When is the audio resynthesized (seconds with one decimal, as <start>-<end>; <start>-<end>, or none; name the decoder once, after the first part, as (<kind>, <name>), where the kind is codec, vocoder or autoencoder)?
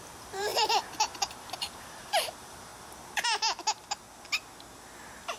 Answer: 0.0-2.7 (vocoder, BigVGAN v2)